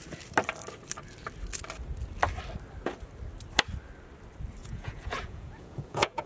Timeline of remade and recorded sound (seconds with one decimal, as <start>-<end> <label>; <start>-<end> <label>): 0.0-4.6 recorded; 4.6-6.3 remade